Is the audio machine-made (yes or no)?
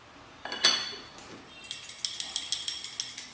no